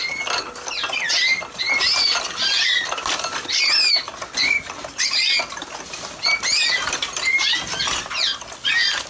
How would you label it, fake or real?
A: real